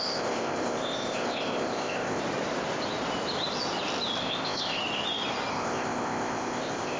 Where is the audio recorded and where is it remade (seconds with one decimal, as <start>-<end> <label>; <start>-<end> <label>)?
0.0-2.2 remade; 2.2-4.2 recorded; 4.2-4.8 remade; 4.8-5.5 recorded; 5.5-7.0 remade